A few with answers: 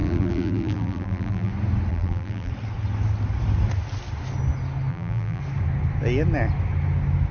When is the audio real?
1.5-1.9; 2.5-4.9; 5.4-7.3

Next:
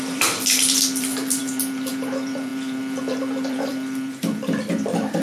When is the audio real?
none